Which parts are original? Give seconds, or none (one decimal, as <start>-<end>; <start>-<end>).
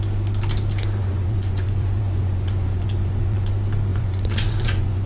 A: 0.0-1.0; 3.5-3.9